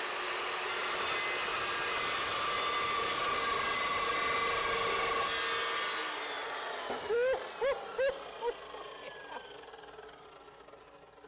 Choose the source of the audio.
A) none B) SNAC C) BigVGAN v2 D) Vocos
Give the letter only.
A